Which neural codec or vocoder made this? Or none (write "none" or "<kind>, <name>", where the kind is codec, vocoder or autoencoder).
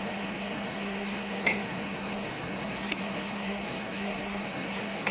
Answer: codec, SNAC